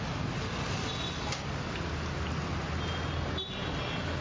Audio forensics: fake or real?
real